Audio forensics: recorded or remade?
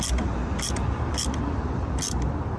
remade